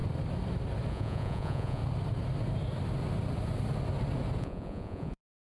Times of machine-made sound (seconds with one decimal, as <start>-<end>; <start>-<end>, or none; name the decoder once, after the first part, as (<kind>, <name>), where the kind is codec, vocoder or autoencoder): 0.9-1.8 (vocoder, Vocos); 4.4-5.4